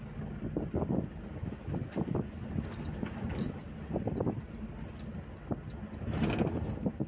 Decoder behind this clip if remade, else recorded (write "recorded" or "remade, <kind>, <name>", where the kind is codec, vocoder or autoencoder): recorded